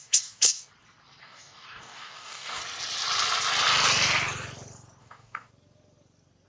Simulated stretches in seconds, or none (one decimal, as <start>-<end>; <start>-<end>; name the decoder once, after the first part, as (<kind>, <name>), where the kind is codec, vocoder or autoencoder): 0.0-0.7 (codec, DAC); 1.2-2.6; 5.0-5.5